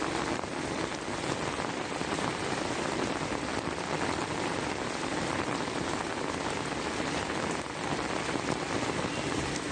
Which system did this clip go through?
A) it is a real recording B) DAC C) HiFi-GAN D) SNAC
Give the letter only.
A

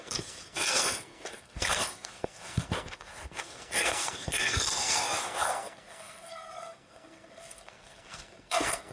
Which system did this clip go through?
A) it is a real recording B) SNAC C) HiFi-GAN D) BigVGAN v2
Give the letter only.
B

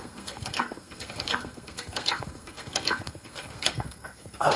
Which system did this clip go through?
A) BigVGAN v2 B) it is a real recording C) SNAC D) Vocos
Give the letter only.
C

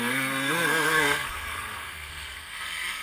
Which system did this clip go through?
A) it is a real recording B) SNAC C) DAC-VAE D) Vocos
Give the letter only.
B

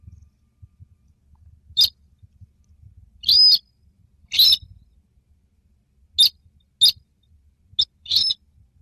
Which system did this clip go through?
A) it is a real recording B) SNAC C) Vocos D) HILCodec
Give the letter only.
A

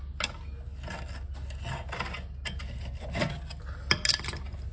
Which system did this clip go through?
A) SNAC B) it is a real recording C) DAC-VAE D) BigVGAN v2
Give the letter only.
B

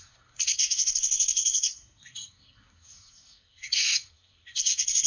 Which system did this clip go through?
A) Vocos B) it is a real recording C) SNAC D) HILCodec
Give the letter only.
C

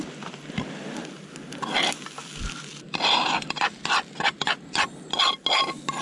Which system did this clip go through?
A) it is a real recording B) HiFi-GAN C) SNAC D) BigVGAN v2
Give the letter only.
A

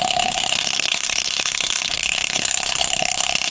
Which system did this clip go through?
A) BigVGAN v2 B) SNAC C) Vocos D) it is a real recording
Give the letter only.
B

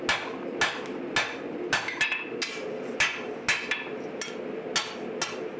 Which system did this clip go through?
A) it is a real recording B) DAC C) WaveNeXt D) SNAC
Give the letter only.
A